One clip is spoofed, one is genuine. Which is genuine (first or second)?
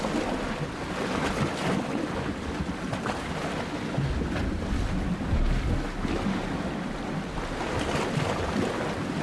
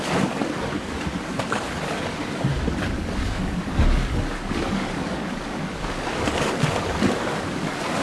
first